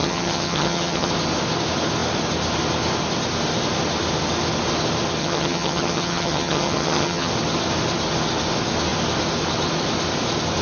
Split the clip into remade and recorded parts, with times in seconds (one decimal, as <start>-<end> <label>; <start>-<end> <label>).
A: 0.0-1.1 remade; 1.1-5.2 recorded; 5.2-7.3 remade; 7.3-10.6 recorded